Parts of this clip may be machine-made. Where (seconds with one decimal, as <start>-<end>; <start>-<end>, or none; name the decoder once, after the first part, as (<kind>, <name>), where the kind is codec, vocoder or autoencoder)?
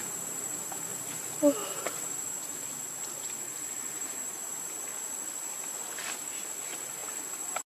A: none